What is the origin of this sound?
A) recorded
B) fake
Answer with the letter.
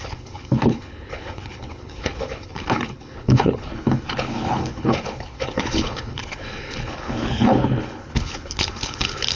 B